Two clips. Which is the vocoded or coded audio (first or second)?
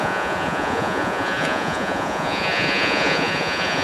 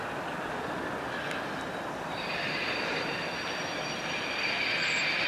first